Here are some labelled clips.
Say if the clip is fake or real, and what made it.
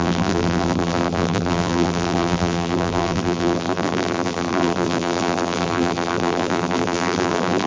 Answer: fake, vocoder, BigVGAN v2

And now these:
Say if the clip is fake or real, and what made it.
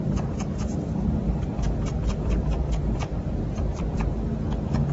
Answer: fake, vocoder, BigVGAN v2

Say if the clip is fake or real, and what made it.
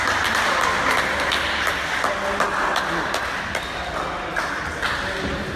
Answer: real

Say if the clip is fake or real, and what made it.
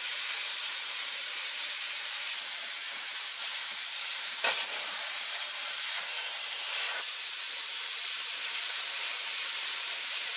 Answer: fake, vocoder, BigVGAN v2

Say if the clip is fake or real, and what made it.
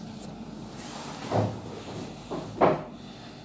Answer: real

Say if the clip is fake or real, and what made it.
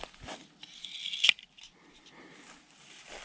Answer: real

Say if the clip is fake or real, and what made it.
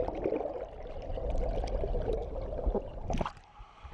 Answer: real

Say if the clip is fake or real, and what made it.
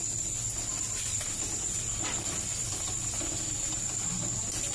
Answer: real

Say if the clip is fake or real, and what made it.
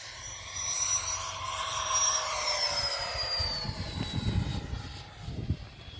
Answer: fake, vocoder, BigVGAN v2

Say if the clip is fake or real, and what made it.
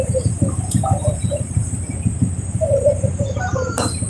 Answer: fake, vocoder, BigVGAN v2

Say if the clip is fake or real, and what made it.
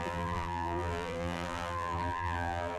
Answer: fake, vocoder, BigVGAN v2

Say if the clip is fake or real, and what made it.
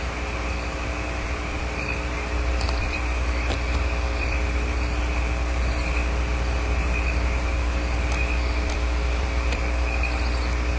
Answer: fake, vocoder, BigVGAN v2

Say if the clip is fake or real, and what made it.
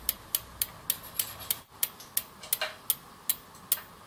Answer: real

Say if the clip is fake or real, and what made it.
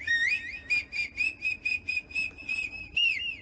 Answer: real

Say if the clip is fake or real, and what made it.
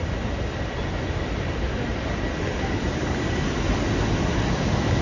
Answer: real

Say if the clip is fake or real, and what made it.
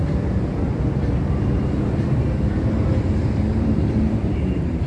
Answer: fake, vocoder, BigVGAN v2